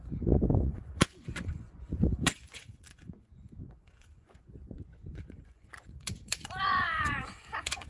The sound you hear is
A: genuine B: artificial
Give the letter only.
B